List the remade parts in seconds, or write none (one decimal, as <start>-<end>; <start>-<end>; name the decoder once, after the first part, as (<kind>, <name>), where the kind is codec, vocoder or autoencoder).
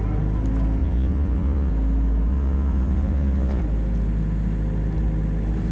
0.8-1.7 (vocoder, Vocos); 2.3-3.6